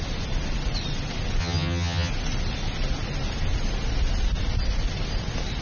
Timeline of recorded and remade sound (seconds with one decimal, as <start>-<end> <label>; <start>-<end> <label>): 0.0-1.4 recorded; 1.4-2.1 remade; 2.1-5.6 recorded